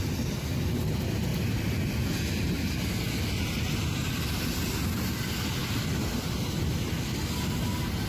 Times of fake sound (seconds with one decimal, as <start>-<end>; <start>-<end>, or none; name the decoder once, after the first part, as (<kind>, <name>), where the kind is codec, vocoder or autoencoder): 1.3-2.5 (vocoder, BigVGAN v2)